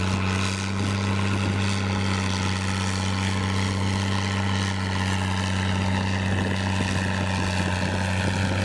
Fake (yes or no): no